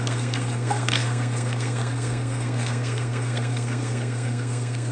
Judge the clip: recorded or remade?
remade